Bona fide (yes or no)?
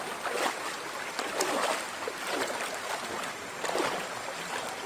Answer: yes